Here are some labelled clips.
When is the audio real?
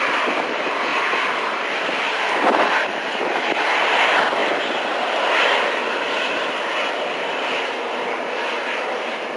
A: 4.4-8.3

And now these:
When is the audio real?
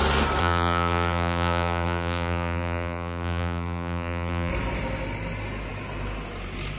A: 0.0-0.4; 4.5-6.8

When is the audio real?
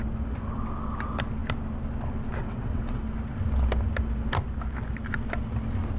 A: 0.0-2.4; 3.0-6.0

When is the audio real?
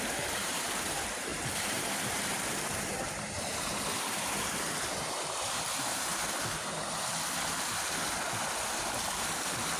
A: 6.1-8.5